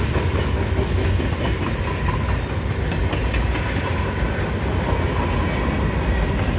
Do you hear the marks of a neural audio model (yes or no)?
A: no